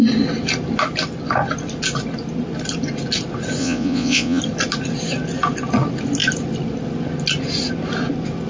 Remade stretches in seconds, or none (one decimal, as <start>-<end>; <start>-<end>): 3.6-4.4

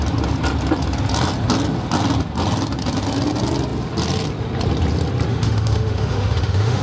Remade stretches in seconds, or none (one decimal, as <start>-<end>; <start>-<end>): 5.3-6.8

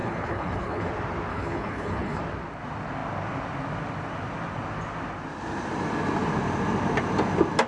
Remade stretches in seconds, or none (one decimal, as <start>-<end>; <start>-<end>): 0.0-0.9; 1.3-2.2

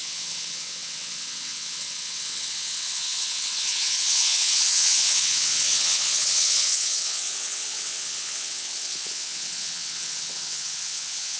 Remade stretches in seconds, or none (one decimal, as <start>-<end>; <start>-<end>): 0.0-11.4